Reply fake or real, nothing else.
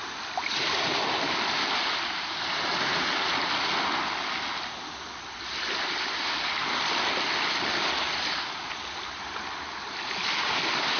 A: real